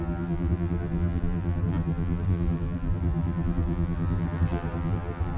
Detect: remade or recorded remade